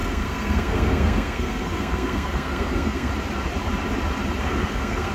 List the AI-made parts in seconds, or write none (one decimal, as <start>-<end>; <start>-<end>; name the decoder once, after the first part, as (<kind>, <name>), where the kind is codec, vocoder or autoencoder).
0.0-3.1 (codec, SNAC); 4.4-5.1